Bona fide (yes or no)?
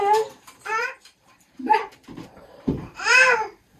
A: no